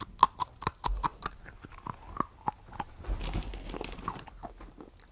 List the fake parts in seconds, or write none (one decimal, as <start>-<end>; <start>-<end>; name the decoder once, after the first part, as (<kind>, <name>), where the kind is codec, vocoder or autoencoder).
none